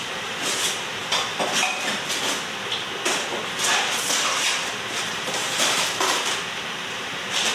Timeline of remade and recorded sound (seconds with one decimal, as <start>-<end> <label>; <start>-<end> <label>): 0.0-1.0 remade; 1.0-4.7 recorded; 4.7-7.5 remade